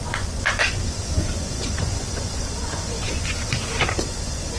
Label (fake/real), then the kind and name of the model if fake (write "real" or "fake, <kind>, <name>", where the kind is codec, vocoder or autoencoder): fake, vocoder, Vocos